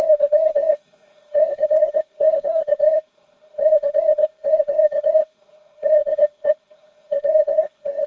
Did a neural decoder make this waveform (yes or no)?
yes